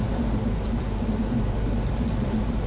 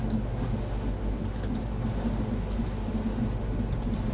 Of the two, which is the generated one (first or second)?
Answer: first